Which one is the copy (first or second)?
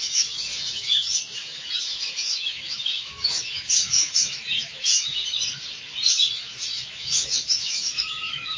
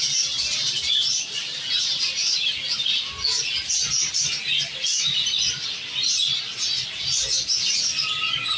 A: first